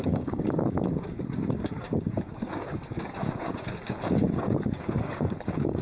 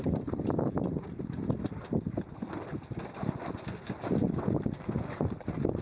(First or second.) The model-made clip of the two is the first